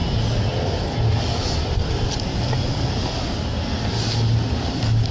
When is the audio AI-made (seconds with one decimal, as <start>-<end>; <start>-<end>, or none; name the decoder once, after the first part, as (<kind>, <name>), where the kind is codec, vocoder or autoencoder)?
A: none